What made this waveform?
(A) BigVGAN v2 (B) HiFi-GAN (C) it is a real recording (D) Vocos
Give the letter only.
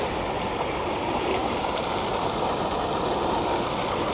C